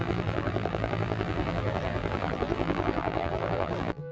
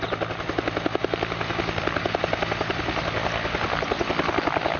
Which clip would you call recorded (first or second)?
second